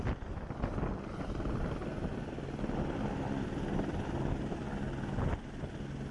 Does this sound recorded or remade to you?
recorded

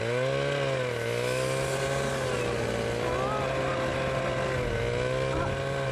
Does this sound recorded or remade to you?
recorded